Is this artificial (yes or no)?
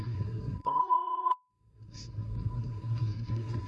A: yes